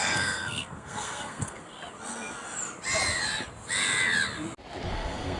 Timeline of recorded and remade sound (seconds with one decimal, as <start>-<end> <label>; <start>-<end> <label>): 0.0-1.7 remade; 1.7-4.9 recorded; 4.9-5.4 remade

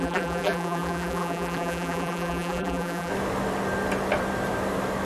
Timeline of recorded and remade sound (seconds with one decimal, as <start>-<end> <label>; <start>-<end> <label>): 0.0-3.1 remade; 3.1-5.1 recorded

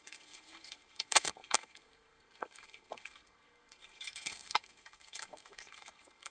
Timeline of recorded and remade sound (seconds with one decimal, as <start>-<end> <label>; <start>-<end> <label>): 0.0-6.3 remade

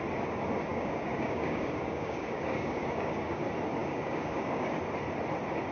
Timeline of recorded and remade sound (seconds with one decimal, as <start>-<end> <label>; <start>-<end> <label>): 0.0-0.7 recorded; 0.7-3.4 remade; 3.4-3.8 recorded; 3.8-4.8 remade; 4.8-5.7 recorded

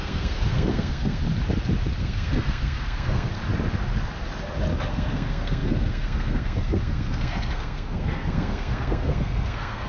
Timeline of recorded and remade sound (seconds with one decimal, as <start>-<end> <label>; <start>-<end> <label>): 0.0-1.2 remade; 1.2-2.0 recorded; 2.0-3.4 remade; 3.4-4.9 recorded; 4.9-9.9 remade

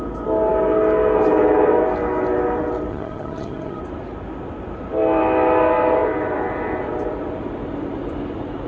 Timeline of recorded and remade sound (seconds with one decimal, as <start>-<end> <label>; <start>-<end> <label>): 0.0-2.9 recorded; 2.9-3.8 remade; 3.8-8.7 recorded